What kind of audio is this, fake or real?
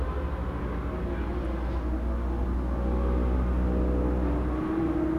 real